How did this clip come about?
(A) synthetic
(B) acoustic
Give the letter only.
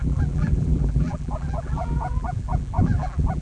A